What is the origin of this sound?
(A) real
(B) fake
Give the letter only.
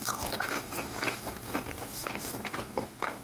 B